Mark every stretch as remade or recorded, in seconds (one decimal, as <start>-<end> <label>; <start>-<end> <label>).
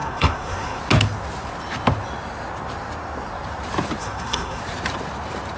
0.0-0.8 remade; 0.8-4.0 recorded; 4.0-4.6 remade; 4.6-5.6 recorded